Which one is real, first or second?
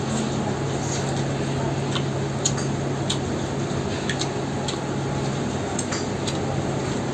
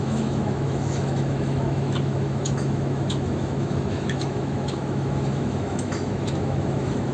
first